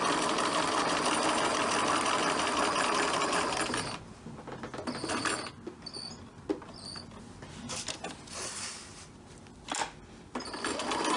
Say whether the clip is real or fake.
real